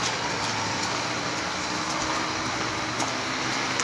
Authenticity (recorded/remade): recorded